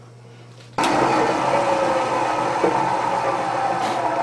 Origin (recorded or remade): recorded